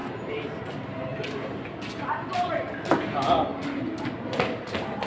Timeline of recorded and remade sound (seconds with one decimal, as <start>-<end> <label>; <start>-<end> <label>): 0.0-0.7 recorded; 0.7-1.1 remade; 1.1-2.3 recorded; 2.3-5.1 remade